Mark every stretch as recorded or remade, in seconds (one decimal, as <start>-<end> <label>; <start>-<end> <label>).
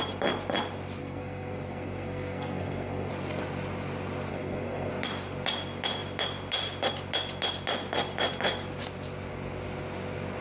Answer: 0.0-1.0 recorded; 1.0-3.1 remade; 3.1-4.3 recorded; 4.3-4.9 remade; 4.9-10.4 recorded